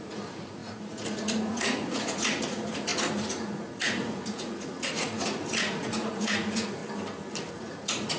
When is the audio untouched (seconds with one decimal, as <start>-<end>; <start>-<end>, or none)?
6.8-7.5